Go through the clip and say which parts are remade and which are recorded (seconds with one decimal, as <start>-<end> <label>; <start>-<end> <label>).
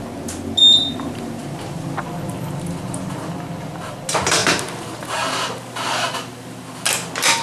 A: 0.0-7.4 recorded